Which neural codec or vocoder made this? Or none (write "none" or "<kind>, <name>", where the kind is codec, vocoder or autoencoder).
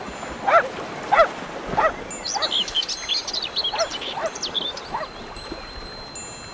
none